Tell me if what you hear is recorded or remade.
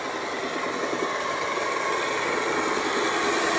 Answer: recorded